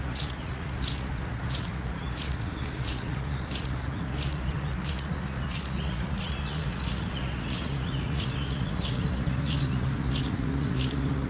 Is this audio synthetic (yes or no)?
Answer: yes